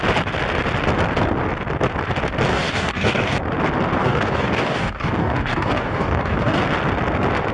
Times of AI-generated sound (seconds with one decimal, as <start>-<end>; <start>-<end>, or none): 2.5-3.4; 4.0-6.6

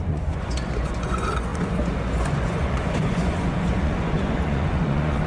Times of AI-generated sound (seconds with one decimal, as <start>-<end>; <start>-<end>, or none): 0.0-5.3

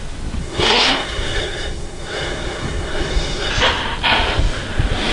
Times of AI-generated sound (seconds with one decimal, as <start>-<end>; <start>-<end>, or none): 0.4-3.5

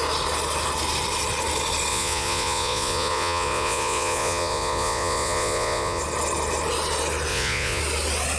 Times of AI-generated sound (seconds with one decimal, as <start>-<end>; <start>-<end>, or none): 1.9-6.0; 7.3-7.8

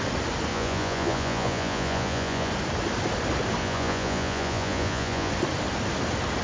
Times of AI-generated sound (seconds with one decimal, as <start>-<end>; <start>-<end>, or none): 0.5-2.5; 3.6-5.3